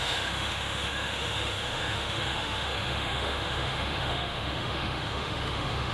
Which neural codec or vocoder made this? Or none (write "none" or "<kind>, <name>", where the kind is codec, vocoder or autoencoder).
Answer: autoencoder, DAC-VAE